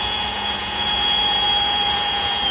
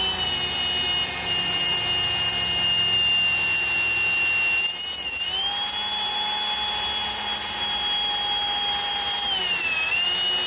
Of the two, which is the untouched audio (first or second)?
second